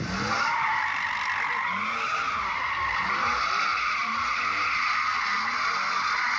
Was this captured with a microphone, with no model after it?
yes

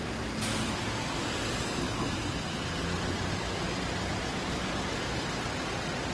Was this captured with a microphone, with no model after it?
yes